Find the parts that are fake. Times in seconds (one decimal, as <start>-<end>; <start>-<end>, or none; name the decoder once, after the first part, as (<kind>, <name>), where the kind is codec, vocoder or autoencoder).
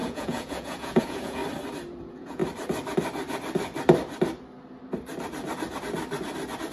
0.0-1.4 (vocoder, Vocos); 2.0-2.4